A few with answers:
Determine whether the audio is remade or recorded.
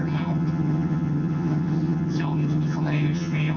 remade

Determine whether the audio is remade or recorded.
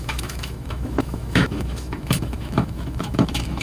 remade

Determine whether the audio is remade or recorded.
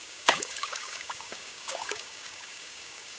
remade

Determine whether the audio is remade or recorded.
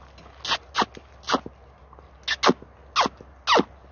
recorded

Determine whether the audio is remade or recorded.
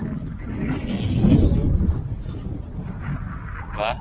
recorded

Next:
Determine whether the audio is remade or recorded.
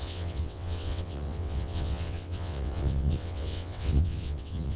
remade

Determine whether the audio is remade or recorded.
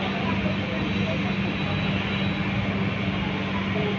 recorded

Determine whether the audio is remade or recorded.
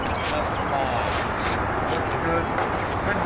recorded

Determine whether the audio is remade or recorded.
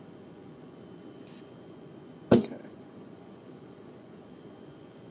remade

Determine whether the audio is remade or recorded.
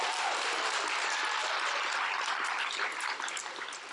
remade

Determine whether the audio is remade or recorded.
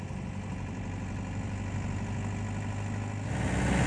recorded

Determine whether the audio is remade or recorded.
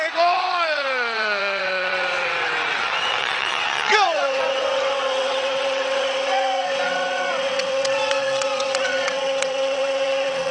remade